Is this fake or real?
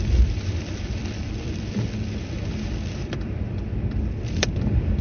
fake